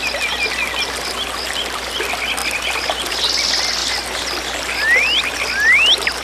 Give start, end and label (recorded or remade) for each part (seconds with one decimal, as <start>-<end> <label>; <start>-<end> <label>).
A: 0.0-6.2 recorded